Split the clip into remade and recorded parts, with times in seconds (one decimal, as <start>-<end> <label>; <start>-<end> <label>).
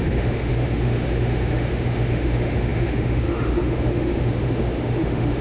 0.0-5.4 remade